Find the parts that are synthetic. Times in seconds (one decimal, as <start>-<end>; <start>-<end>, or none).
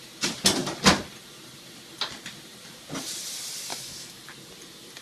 3.7-4.2